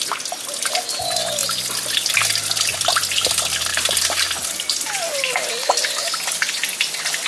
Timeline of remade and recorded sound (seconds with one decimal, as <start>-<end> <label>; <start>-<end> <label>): 0.0-3.7 recorded; 3.7-5.5 remade; 5.5-7.3 recorded